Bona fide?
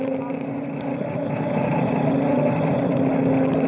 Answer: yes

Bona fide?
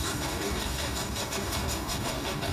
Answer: no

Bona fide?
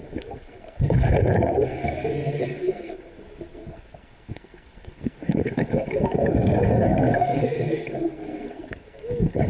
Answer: no